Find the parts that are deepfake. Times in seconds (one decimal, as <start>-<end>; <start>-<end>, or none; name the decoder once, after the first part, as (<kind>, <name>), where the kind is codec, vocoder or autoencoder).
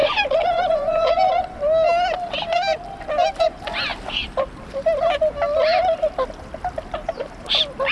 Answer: 0.0-1.6 (vocoder, Vocos)